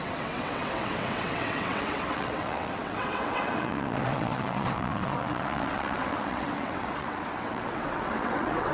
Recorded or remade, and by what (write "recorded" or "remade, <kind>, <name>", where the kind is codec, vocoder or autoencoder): remade, vocoder, WaveNeXt